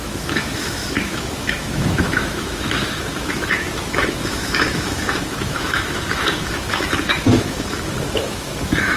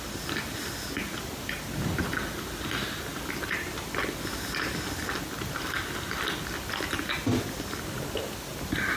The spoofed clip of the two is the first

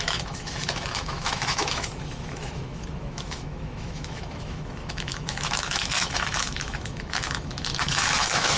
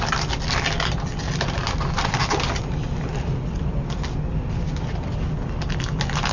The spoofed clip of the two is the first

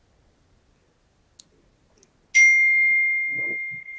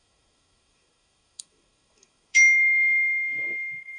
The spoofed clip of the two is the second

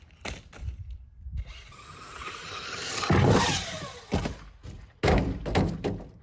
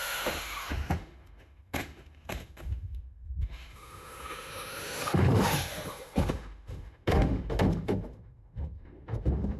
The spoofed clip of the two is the second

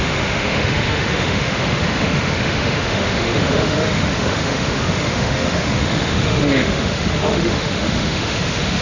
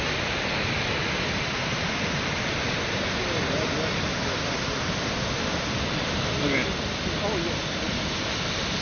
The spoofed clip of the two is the first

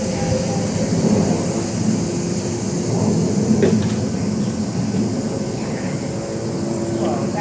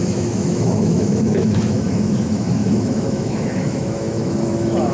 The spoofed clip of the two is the second